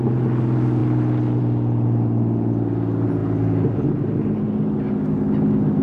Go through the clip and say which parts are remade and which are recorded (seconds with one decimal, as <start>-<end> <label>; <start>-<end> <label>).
0.0-5.8 recorded